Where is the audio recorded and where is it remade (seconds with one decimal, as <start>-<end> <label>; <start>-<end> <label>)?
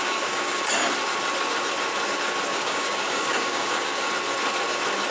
0.0-0.7 remade; 0.7-2.5 recorded; 2.5-4.1 remade; 4.1-5.1 recorded